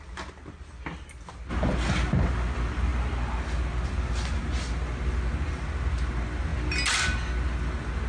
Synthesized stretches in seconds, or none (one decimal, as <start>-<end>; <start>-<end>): none